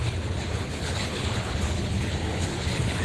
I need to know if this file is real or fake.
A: fake